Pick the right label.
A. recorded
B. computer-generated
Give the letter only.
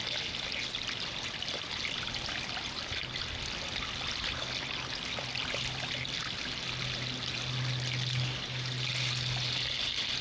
A